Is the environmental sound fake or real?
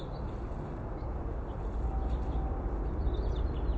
fake